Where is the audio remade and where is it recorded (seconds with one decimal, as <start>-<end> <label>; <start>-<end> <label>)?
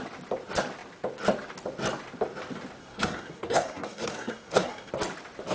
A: 0.0-2.8 recorded; 2.8-4.9 remade; 4.9-5.5 recorded